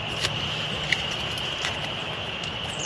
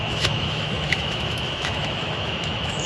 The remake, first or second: second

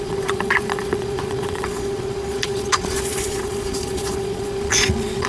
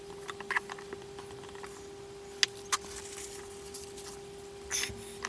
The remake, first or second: first